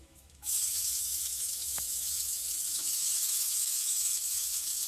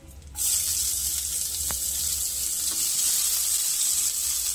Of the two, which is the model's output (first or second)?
first